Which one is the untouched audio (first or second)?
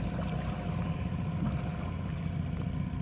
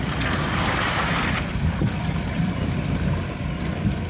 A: first